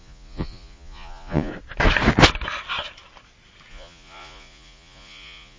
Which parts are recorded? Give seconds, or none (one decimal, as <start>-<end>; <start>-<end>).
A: 1.5-3.7